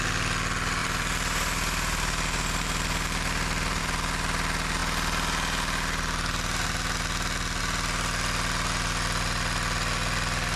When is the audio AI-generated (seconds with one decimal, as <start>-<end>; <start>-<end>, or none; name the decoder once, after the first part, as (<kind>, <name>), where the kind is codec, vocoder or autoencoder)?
0.8-3.8 (vocoder, BigVGAN v2)